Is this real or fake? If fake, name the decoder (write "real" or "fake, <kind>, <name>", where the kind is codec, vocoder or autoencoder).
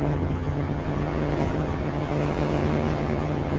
fake, vocoder, HiFi-GAN